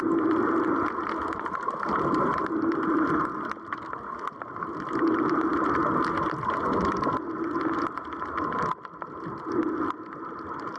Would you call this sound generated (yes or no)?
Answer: no